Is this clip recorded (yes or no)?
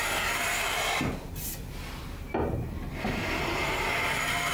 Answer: yes